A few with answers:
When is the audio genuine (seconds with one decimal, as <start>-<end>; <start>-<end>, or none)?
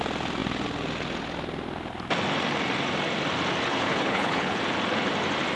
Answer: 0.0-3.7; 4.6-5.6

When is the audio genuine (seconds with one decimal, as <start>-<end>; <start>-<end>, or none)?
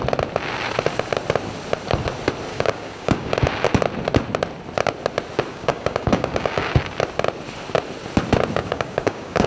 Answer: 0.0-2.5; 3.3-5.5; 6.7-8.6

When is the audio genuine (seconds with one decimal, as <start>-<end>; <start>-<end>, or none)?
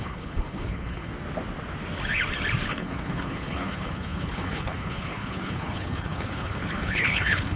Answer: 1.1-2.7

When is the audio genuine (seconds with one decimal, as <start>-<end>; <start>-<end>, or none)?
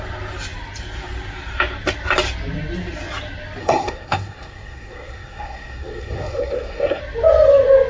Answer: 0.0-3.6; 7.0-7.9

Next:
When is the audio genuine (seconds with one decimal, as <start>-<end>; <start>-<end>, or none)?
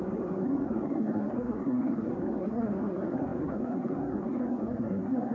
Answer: none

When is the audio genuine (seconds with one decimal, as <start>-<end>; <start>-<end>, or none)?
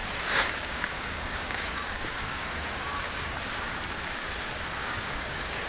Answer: 3.4-4.8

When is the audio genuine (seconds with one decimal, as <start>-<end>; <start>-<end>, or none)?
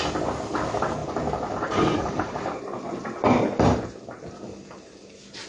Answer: 0.0-1.0; 2.6-5.5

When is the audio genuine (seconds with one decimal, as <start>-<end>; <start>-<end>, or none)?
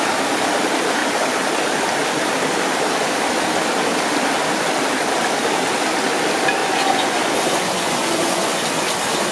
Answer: 0.0-6.6; 8.6-9.3